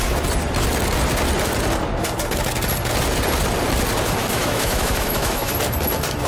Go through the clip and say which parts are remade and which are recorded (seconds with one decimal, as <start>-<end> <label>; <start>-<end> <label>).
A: 0.0-4.2 recorded; 4.2-5.5 remade; 5.5-6.3 recorded